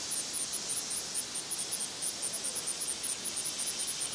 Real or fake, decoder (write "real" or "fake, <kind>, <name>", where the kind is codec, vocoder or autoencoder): real